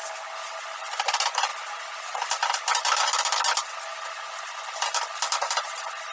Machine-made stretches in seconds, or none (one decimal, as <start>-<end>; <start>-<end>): none